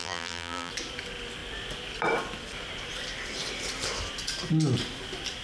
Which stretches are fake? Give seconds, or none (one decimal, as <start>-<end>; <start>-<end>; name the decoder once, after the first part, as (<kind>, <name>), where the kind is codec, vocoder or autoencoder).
0.0-0.7 (vocoder, BigVGAN v2)

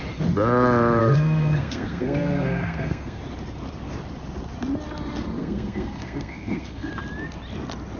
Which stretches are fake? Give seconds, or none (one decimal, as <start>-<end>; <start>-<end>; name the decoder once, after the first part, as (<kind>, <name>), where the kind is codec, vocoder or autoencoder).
1.0-3.2 (codec, SNAC); 5.4-6.9

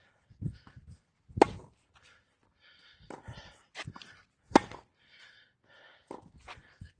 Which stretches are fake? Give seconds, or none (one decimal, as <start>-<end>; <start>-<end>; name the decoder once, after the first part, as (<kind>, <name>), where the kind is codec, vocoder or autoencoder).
none

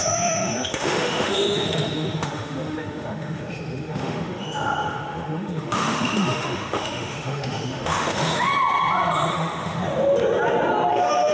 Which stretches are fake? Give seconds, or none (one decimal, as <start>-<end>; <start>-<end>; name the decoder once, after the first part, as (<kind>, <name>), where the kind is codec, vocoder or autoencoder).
0.0-8.5 (autoencoder, DAC-VAE); 9.3-9.8; 10.9-11.3